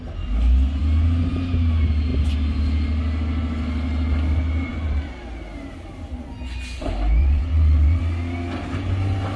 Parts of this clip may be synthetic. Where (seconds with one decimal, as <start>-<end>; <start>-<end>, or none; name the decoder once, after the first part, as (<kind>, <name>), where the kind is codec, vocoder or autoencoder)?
7.2-8.0 (vocoder, WaveNeXt)